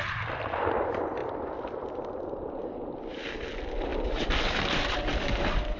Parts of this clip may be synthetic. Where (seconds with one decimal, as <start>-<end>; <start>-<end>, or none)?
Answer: none

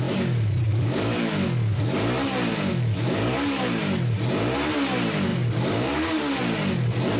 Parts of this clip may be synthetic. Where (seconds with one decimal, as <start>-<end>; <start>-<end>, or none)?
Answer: 0.7-1.8; 2.5-3.8; 5.3-6.4

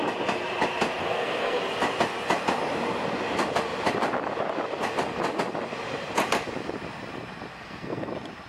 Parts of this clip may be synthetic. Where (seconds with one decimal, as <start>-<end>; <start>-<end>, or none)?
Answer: 1.0-1.6; 7.5-8.1

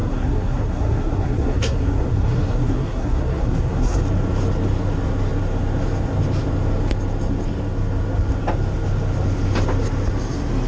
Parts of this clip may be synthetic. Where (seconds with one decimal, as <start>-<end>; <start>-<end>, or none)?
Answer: 0.0-4.0

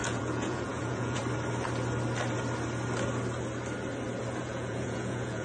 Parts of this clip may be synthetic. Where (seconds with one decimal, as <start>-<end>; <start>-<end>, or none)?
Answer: 0.0-1.2; 4.4-5.4

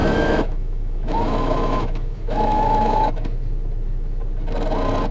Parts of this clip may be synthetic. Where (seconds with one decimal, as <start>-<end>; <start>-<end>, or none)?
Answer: 0.0-3.1